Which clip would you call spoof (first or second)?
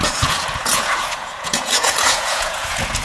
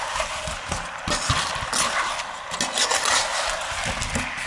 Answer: first